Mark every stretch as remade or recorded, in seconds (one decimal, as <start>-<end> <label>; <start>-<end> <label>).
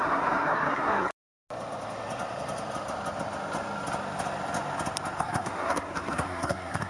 0.0-1.1 remade; 1.1-5.2 recorded; 5.2-6.9 remade